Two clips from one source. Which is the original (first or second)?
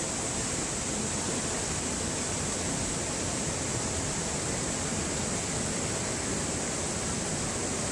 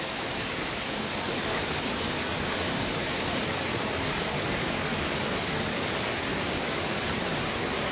first